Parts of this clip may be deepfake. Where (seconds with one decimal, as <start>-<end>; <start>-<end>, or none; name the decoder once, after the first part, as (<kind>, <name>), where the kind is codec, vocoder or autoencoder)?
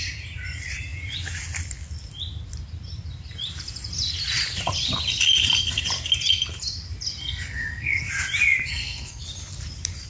7.2-8.1 (codec, SNAC); 8.7-9.2